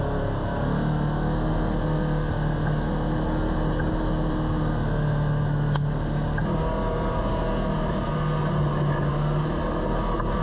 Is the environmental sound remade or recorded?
recorded